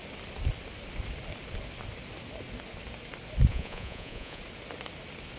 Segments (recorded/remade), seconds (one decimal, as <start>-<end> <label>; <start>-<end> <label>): 0.0-3.5 recorded; 3.5-4.4 remade; 4.4-5.4 recorded